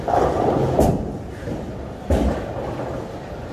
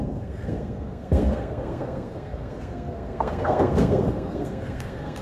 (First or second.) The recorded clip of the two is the first